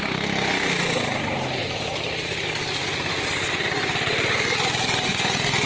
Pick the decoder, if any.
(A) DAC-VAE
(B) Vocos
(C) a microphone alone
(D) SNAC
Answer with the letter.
C